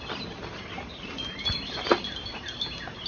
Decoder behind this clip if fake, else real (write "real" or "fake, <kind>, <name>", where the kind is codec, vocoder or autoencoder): real